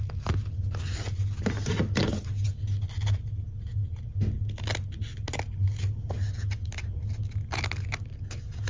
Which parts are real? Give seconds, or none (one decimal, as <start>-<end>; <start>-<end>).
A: 0.0-8.7

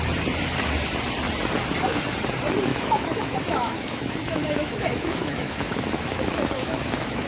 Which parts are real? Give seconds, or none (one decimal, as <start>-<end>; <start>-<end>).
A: 0.0-2.7